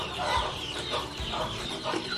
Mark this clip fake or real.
fake